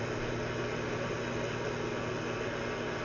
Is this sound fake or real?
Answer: real